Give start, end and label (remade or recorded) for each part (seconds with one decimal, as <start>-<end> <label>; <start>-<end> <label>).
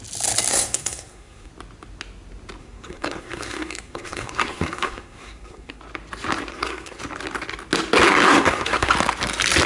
0.0-0.5 recorded; 0.5-1.5 remade; 1.5-2.6 recorded; 2.6-5.8 remade; 5.8-6.5 recorded; 6.5-7.0 remade; 7.0-8.3 recorded; 8.3-8.9 remade; 8.9-9.7 recorded